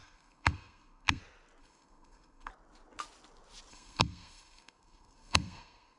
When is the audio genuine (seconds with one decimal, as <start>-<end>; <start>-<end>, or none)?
1.2-1.6; 2.5-3.7